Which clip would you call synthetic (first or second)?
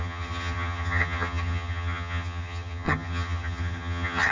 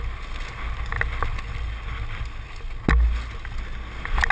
first